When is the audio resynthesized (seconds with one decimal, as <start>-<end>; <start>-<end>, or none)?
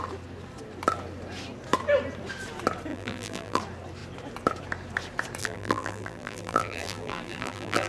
2.9-3.6; 5.4-7.9